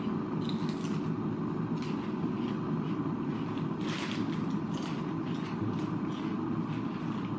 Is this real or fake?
real